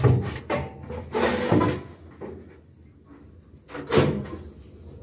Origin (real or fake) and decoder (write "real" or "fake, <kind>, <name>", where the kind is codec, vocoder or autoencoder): real